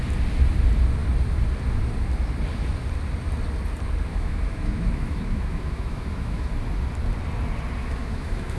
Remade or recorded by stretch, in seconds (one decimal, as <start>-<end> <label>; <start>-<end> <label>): 0.0-4.1 recorded; 4.1-6.5 remade; 6.5-7.8 recorded; 7.8-8.6 remade